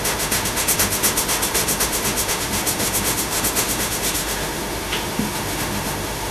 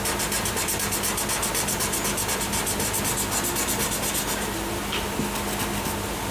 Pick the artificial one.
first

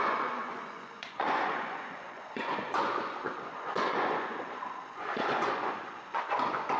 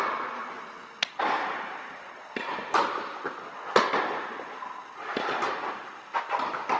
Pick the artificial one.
first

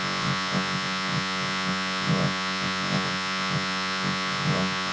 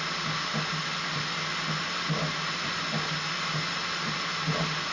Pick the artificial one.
first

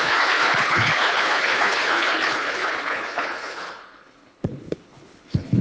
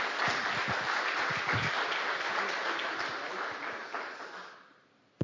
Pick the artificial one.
first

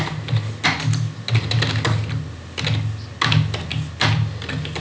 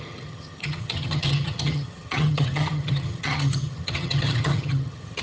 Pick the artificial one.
second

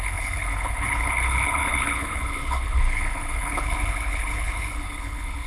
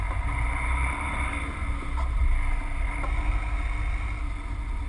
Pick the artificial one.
first